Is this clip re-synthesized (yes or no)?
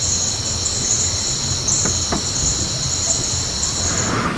no